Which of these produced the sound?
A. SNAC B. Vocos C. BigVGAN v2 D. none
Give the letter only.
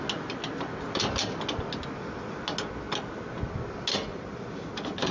D